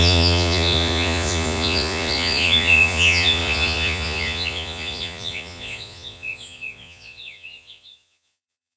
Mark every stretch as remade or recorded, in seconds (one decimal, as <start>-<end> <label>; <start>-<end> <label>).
0.0-8.8 remade